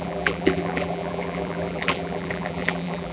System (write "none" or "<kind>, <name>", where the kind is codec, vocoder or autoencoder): vocoder, BigVGAN v2